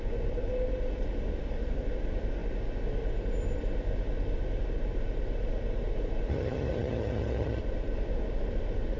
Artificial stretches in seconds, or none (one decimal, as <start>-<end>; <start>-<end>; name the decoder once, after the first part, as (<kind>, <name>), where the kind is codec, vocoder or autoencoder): 6.3-7.6 (vocoder, HiFi-GAN)